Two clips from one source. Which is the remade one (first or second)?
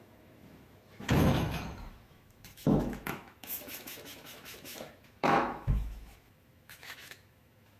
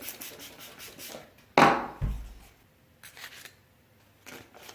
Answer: first